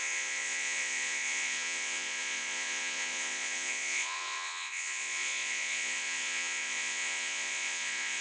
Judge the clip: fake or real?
fake